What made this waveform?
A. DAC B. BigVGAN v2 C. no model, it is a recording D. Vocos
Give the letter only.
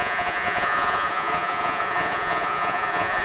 D